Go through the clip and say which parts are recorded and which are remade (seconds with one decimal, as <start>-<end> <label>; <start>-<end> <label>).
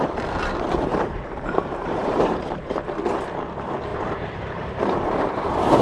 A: 0.0-0.9 recorded; 0.9-2.6 remade; 2.6-3.9 recorded; 3.9-5.8 remade